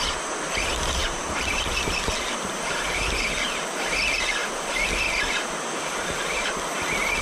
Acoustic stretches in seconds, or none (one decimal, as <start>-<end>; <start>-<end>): 0.0-1.0; 2.8-7.2